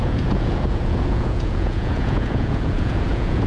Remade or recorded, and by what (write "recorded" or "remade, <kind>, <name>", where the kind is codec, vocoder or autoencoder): remade, vocoder, Vocos